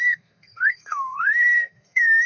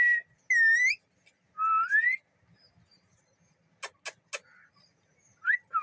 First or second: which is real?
second